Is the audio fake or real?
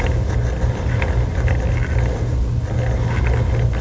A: real